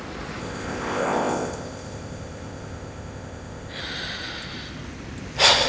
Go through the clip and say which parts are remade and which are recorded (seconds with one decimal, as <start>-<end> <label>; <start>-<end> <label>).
0.0-0.4 recorded; 0.4-3.8 remade; 3.8-5.7 recorded